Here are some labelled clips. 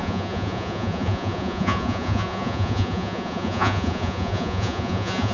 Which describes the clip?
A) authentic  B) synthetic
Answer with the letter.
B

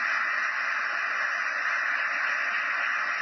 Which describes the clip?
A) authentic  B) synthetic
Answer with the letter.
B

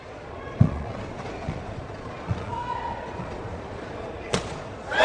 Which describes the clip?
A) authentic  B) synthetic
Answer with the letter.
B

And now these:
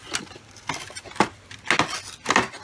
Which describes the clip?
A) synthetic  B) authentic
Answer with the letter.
B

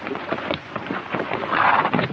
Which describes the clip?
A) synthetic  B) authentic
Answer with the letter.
A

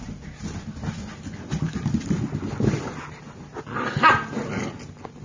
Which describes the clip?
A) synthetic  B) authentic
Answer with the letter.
B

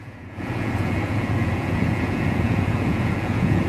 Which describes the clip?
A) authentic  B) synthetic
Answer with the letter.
B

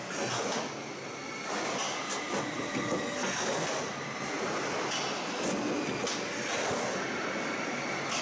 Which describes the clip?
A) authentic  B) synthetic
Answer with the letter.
A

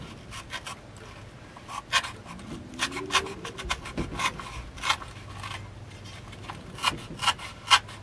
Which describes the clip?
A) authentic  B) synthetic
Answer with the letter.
A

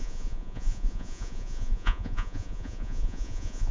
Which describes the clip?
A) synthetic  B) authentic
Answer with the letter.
A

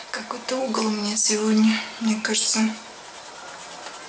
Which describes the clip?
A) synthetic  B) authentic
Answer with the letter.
B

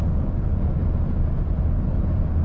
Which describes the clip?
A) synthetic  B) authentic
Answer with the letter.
A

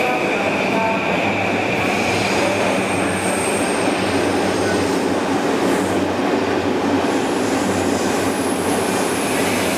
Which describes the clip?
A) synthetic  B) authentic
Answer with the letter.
B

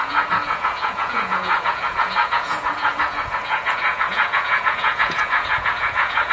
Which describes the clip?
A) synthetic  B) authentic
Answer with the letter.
A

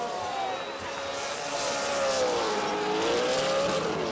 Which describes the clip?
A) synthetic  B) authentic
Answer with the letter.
B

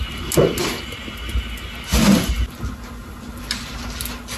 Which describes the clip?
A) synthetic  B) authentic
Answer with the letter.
B